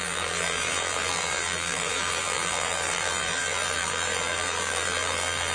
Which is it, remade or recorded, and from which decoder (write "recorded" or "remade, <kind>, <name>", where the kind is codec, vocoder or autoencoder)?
remade, vocoder, BigVGAN v2